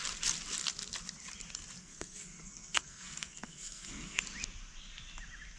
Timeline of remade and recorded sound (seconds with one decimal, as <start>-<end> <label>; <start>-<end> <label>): 0.0-1.8 recorded; 1.8-4.2 remade; 4.2-5.6 recorded